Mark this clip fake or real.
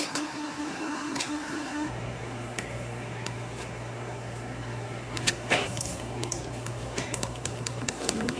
fake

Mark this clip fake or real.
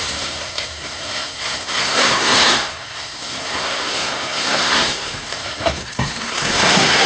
fake